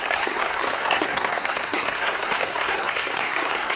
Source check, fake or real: fake